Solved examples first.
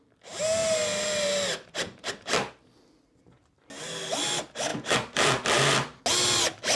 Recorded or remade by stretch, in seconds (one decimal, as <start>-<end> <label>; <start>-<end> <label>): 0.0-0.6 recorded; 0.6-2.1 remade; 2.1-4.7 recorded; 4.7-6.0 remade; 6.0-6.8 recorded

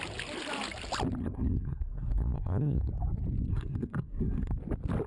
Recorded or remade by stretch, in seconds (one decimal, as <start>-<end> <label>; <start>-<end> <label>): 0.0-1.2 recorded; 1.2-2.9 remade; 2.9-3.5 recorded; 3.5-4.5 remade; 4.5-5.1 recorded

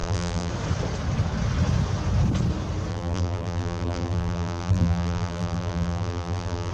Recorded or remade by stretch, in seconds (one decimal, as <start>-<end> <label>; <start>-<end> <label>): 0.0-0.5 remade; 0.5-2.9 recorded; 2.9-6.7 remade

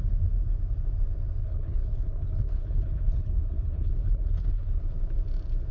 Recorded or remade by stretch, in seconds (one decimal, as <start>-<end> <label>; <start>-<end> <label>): 0.0-1.4 recorded; 1.4-4.8 remade; 4.8-5.7 recorded

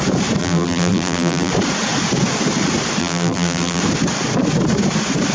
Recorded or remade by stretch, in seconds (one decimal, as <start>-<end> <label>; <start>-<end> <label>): 0.0-0.4 recorded; 0.4-1.5 remade; 1.5-3.0 recorded; 3.0-3.8 remade; 3.8-5.3 recorded